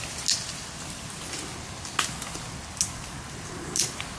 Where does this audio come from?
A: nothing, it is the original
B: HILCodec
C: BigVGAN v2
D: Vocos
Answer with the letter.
A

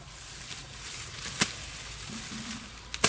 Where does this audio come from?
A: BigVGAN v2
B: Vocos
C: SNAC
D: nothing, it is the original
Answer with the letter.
D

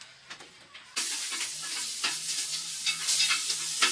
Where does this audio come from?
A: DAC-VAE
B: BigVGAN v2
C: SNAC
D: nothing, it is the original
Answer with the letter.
D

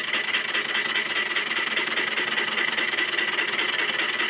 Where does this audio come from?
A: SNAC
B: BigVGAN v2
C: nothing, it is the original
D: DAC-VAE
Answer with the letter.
C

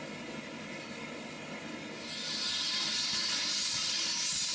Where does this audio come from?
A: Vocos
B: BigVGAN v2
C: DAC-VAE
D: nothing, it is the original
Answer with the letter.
D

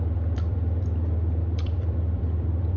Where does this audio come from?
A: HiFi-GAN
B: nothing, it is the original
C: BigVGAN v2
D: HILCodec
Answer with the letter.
C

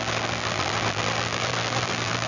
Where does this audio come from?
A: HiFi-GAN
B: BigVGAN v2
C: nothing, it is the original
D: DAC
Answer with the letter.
B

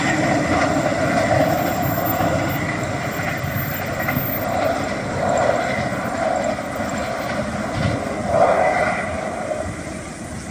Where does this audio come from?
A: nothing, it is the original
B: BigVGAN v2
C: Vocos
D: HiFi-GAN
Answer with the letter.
A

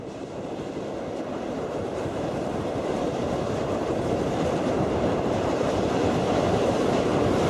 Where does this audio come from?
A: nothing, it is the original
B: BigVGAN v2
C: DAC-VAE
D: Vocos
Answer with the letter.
B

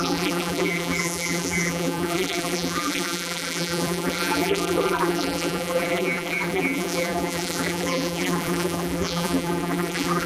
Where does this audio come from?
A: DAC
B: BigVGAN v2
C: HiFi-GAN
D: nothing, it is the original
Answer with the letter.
B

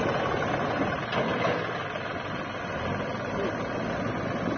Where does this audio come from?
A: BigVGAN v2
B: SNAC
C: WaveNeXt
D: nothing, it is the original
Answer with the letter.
D